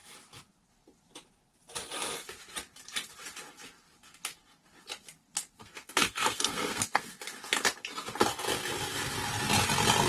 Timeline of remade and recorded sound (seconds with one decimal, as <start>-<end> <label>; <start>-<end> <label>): 0.0-5.6 recorded; 5.6-7.1 remade; 7.1-10.1 recorded